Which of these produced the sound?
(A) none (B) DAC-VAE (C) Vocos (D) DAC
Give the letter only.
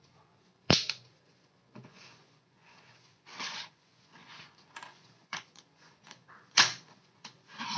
C